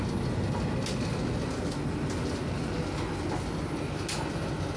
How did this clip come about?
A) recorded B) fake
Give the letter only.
A